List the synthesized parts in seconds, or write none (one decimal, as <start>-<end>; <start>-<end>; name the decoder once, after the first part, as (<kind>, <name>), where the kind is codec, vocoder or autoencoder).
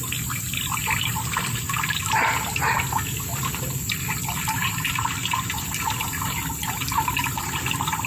none